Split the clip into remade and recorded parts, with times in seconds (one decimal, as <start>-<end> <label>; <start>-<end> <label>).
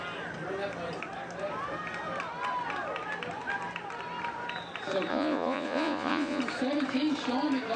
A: 0.0-5.1 recorded; 5.1-6.4 remade; 6.4-7.8 recorded